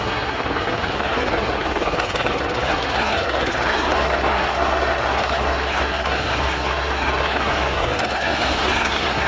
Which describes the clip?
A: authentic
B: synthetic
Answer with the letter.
B